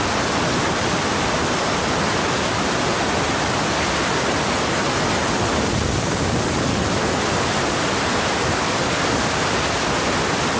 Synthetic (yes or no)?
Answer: no